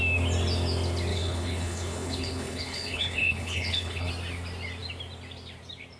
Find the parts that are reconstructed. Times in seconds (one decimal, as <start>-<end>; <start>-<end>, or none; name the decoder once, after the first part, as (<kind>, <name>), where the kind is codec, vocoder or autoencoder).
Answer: 1.1-4.1 (codec, HILCodec)

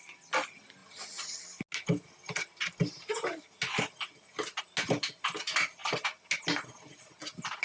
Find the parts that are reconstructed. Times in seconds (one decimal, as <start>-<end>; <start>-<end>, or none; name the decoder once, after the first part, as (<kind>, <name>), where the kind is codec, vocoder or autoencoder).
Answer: none

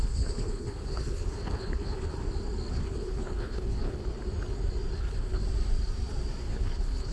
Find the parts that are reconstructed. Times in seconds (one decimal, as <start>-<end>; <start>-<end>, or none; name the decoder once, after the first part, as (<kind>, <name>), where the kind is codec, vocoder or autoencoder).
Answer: 0.0-2.1 (codec, HILCodec); 2.7-4.0; 5.0-5.4; 6.4-7.1

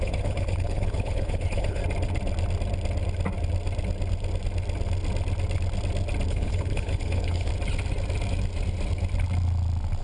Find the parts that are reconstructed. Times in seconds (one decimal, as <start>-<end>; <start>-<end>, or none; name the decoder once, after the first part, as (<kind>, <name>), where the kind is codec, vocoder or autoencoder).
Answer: 0.0-1.8 (codec, HILCodec); 6.3-7.5

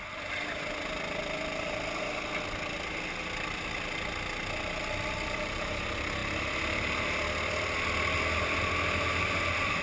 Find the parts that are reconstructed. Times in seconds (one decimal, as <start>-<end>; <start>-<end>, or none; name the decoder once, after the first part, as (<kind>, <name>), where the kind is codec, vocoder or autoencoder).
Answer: none

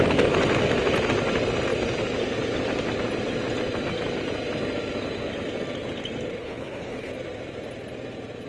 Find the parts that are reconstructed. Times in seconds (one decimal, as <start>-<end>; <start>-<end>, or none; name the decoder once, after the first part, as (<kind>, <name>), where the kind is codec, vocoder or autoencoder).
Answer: 6.4-7.1 (codec, HILCodec)

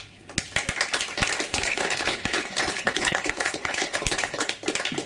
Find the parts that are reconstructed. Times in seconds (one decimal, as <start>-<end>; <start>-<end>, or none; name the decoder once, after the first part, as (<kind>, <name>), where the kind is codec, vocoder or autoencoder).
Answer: 1.5-4.5 (codec, HILCodec)

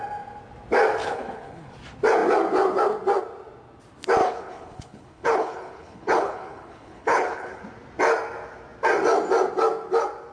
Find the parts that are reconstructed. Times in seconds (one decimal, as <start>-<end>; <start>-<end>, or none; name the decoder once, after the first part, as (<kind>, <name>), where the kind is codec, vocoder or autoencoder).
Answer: 1.0-1.7 (codec, HILCodec); 4.2-7.6